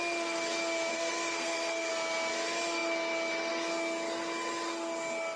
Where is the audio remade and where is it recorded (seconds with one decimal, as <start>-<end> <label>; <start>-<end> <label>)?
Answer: 0.0-0.9 recorded; 0.9-1.9 remade; 1.9-5.4 recorded